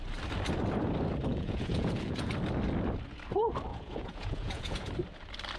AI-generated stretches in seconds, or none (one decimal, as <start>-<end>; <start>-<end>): 1.3-2.3; 3.7-4.9